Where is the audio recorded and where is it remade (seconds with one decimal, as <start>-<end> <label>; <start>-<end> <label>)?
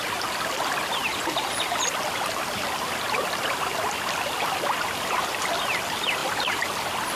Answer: 0.0-6.2 recorded; 6.2-6.8 remade; 6.8-7.2 recorded